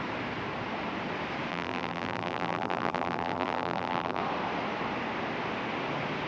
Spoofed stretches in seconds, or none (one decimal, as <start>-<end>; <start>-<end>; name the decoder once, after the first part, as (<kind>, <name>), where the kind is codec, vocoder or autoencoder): 1.5-4.2 (vocoder, BigVGAN v2)